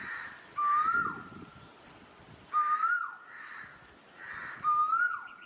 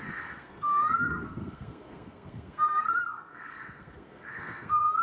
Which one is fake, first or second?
second